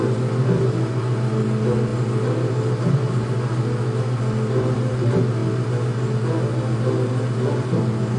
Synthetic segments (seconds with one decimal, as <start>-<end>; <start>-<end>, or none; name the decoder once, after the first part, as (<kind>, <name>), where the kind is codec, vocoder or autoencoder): none